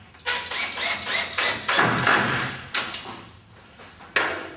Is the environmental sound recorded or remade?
recorded